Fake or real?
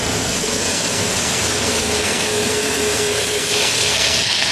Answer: fake